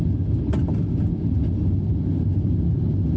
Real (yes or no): yes